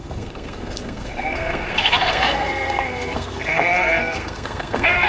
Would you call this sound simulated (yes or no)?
yes